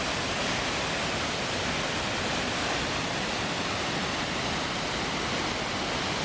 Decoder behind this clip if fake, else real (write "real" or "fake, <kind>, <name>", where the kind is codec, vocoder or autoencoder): real